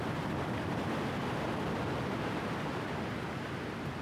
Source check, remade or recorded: recorded